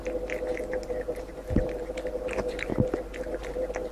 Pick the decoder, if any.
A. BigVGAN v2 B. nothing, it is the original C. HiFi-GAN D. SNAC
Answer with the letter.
B